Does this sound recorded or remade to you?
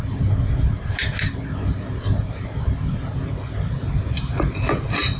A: recorded